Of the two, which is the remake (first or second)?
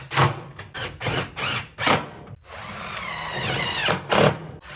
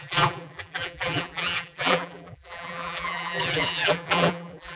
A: second